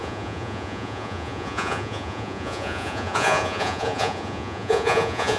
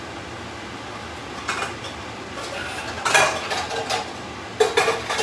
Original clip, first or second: second